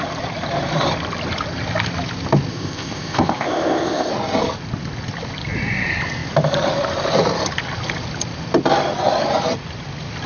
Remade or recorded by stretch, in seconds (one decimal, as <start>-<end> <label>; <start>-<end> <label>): 0.0-2.5 recorded; 2.5-4.1 remade; 4.1-10.3 recorded